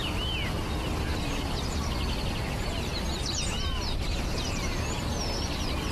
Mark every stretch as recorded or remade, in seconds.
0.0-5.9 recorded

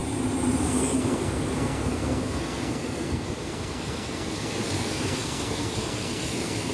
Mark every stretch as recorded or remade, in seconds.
0.0-0.6 recorded; 0.6-6.7 remade

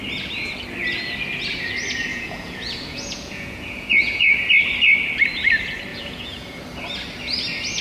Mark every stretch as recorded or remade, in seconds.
0.0-2.1 recorded; 2.1-4.5 remade; 4.5-5.9 recorded; 5.9-6.6 remade; 6.6-7.8 recorded

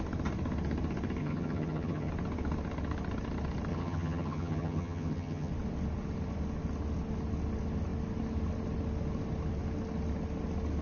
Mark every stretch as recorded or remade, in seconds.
0.0-1.2 recorded; 1.2-2.1 remade; 2.1-3.7 recorded; 3.7-5.5 remade; 5.5-10.8 recorded

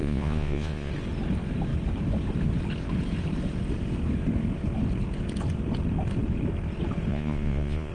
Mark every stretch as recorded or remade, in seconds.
0.0-0.9 remade; 0.9-7.1 recorded; 7.1-7.9 remade